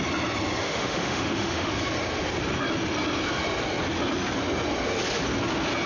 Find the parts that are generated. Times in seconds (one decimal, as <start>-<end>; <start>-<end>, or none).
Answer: 0.6-1.7